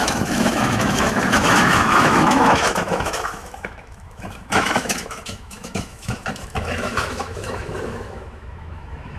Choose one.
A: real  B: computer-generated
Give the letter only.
B